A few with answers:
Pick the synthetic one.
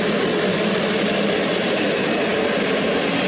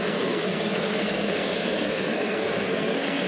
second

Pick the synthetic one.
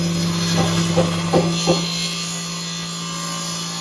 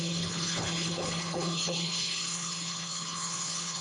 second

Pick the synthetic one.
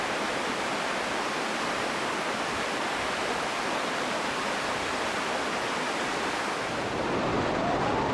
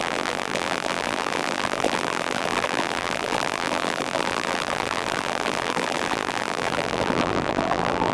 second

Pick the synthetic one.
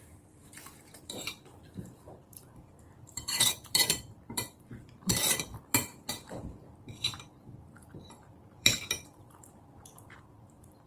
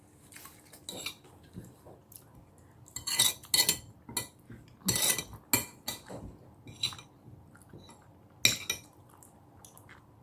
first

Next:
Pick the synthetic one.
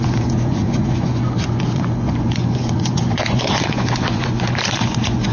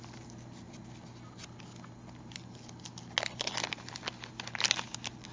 first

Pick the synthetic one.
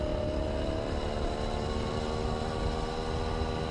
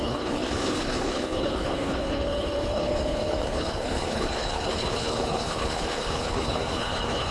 second